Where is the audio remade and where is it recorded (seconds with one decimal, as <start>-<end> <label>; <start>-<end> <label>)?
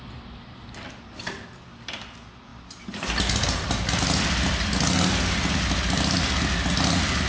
0.0-7.3 recorded